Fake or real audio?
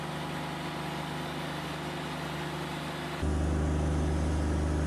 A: real